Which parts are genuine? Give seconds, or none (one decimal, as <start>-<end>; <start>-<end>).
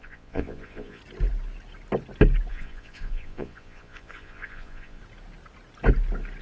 1.0-2.5; 5.0-6.4